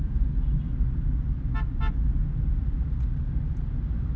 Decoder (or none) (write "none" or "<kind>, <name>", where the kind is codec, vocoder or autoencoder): none